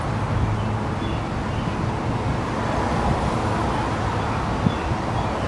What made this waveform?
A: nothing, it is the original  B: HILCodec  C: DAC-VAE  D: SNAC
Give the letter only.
A